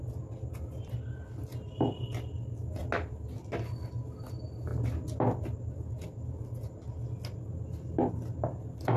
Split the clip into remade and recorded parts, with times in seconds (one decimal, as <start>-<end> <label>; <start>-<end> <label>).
0.0-9.0 recorded

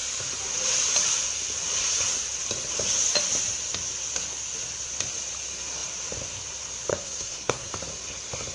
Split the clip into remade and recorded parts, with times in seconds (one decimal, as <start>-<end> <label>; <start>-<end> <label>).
0.0-6.9 recorded; 6.9-7.7 remade; 7.7-8.5 recorded

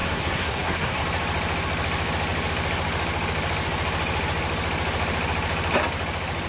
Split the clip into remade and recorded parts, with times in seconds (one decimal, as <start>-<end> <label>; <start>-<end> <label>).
0.0-1.0 remade; 1.0-6.5 recorded

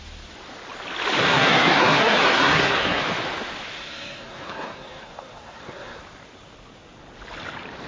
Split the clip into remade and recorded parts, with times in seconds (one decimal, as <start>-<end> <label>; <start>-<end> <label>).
0.0-1.2 recorded; 1.2-3.0 remade; 3.0-3.8 recorded; 3.8-6.0 remade; 6.0-7.9 recorded

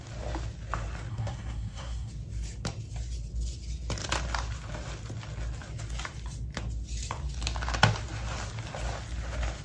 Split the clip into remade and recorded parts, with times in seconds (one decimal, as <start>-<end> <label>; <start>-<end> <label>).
0.0-1.1 recorded; 1.1-2.1 remade; 2.1-9.6 recorded

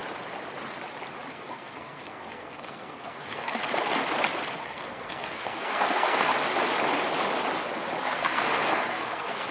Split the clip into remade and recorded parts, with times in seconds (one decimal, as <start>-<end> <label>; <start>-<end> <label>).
0.0-1.3 recorded; 1.3-3.6 remade; 3.6-4.5 recorded; 4.5-6.3 remade; 6.3-8.0 recorded; 8.0-9.5 remade